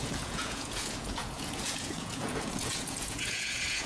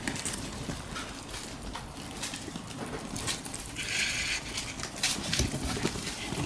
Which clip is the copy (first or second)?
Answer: first